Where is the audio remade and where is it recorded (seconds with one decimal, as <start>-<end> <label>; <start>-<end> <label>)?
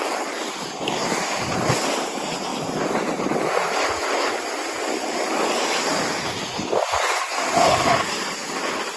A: 0.0-9.0 recorded